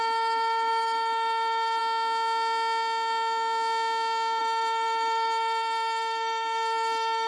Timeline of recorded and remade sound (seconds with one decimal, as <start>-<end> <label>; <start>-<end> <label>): 0.0-1.8 remade; 1.8-4.4 recorded; 4.4-7.3 remade